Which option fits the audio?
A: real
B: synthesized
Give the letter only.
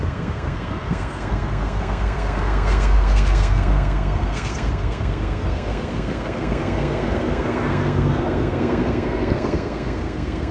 B